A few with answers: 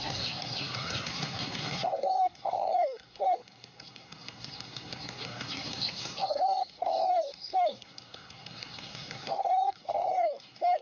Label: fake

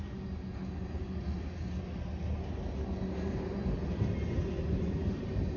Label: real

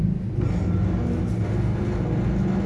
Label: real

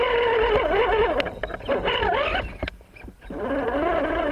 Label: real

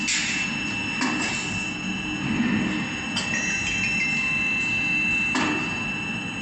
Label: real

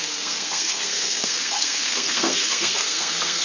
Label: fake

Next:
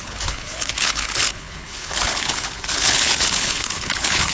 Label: fake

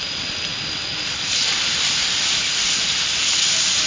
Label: real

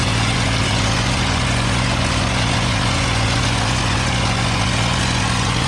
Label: fake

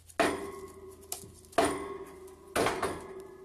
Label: real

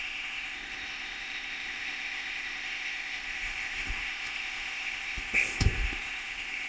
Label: fake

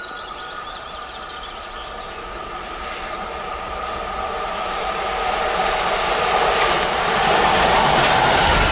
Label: real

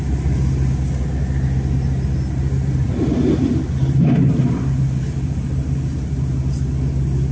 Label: real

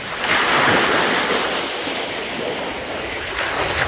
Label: fake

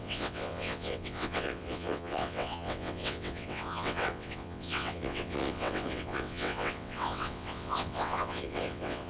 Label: fake